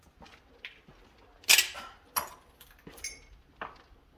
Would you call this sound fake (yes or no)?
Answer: no